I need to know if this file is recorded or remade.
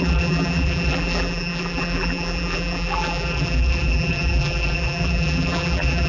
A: remade